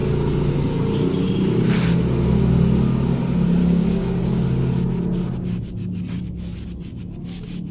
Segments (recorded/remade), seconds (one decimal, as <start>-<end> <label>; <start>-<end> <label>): 0.0-3.6 recorded; 3.6-4.4 remade; 4.4-7.7 recorded